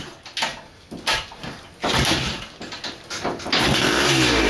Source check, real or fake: real